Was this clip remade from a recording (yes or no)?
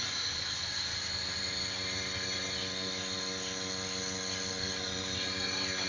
no